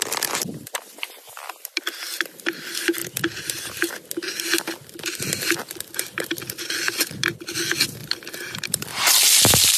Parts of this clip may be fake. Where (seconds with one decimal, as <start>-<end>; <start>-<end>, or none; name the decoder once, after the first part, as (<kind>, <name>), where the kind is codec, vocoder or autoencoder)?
none